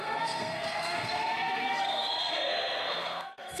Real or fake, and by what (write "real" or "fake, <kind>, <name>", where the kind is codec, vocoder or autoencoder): fake, codec, SNAC